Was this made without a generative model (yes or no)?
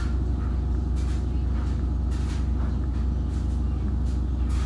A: yes